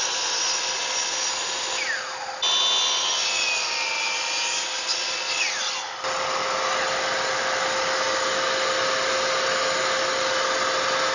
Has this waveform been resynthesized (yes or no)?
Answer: no